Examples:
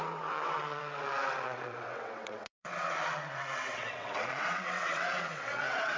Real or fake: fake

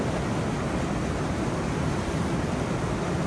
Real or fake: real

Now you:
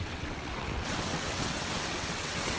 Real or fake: fake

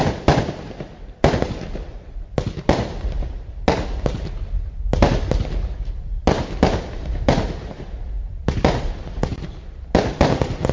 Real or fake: real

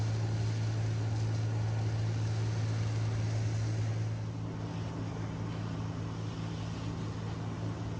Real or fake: real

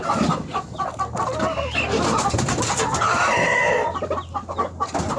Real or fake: real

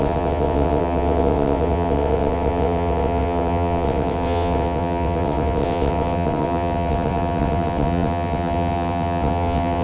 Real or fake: fake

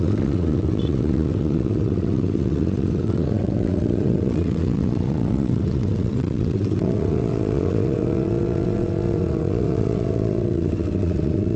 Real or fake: fake